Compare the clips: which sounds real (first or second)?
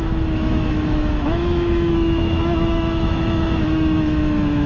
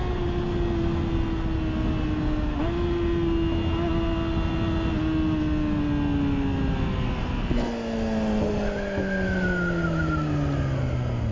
second